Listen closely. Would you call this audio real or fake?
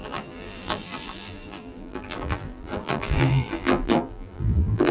fake